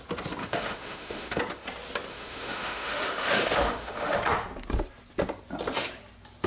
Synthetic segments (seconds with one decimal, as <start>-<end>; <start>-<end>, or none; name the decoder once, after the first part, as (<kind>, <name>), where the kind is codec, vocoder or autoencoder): 0.4-1.4 (autoencoder, DAC-VAE); 2.1-4.2